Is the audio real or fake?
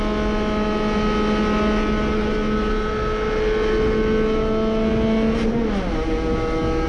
real